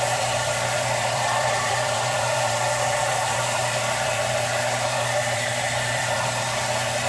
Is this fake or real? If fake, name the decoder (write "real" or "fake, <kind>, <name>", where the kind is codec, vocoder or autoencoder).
fake, vocoder, BigVGAN v2